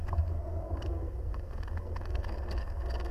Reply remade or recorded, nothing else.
remade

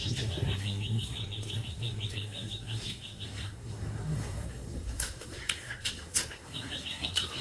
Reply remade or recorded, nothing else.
remade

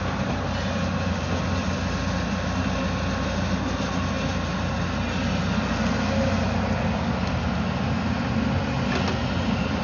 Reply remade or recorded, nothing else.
recorded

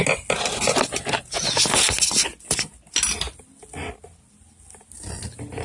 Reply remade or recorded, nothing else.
recorded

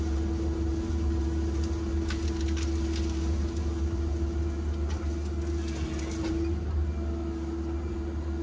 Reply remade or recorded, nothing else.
recorded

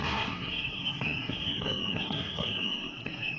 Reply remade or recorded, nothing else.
remade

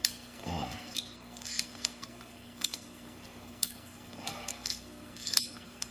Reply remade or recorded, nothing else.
remade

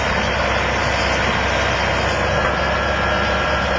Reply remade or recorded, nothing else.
recorded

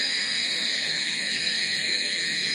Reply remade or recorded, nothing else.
remade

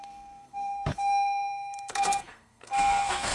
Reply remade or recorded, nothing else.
remade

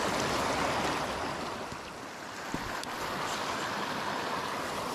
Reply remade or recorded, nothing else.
recorded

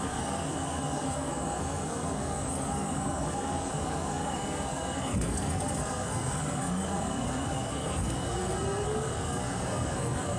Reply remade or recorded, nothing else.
remade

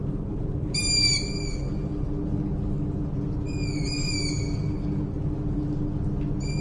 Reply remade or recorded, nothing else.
recorded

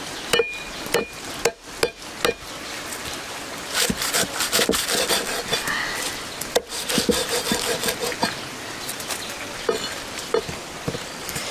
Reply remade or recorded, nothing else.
recorded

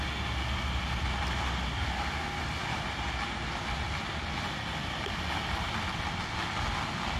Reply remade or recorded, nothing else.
recorded